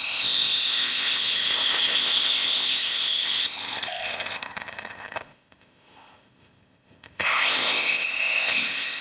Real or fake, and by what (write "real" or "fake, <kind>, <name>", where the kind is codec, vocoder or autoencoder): fake, codec, ZipCodec